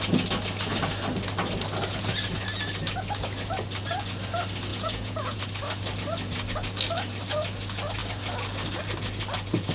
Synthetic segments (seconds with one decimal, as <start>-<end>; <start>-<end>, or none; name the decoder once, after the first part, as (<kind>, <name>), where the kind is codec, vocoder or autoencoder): 4.7-5.4 (vocoder, Vocos)